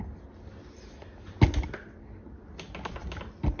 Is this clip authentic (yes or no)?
yes